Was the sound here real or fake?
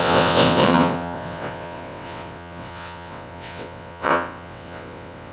fake